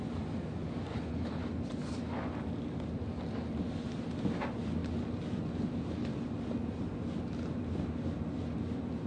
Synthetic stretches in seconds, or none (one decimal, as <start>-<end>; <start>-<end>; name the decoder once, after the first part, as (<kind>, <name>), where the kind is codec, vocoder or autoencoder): 0.9-1.4 (codec, HILCodec)